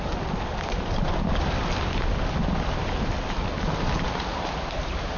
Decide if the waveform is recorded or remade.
recorded